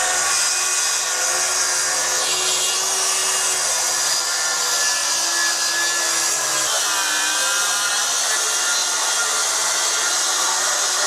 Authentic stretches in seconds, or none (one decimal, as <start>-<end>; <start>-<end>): 0.0-11.1